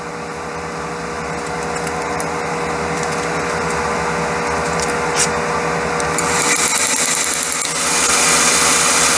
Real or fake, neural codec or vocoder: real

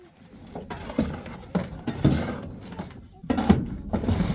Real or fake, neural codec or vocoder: real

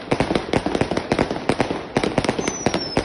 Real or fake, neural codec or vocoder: real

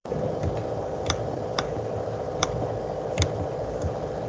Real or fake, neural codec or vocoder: fake, vocoder, BigVGAN v2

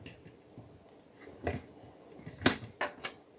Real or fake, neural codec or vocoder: real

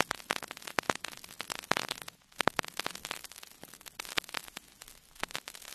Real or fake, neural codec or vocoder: real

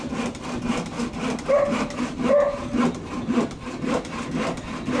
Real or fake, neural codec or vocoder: real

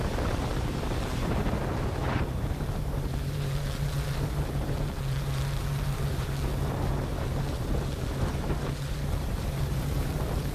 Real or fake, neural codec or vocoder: fake, vocoder, BigVGAN v2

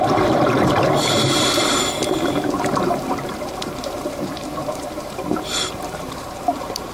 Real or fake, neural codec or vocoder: fake, vocoder, BigVGAN v2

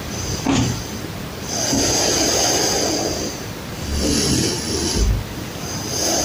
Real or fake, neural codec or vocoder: real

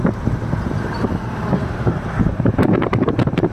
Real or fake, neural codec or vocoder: fake, vocoder, BigVGAN v2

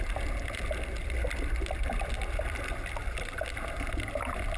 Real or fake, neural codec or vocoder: real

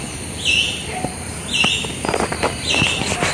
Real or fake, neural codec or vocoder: real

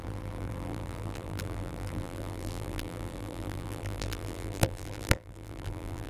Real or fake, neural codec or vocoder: fake, vocoder, BigVGAN v2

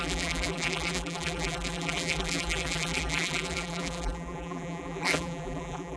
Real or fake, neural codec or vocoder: fake, vocoder, BigVGAN v2